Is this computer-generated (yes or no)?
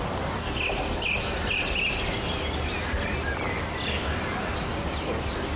no